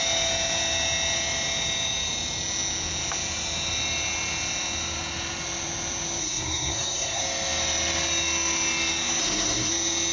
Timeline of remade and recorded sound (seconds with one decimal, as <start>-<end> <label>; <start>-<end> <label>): 0.0-6.2 recorded; 6.2-7.2 remade; 7.2-9.2 recorded; 9.2-9.7 remade; 9.7-10.1 recorded